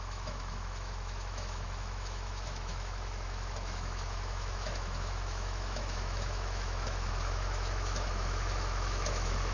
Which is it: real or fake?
fake